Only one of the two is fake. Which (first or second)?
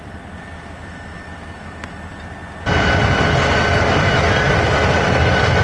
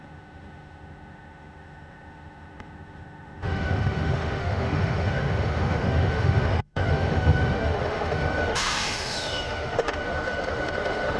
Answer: second